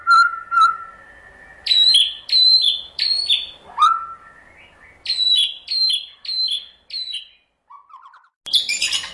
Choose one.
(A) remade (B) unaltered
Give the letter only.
B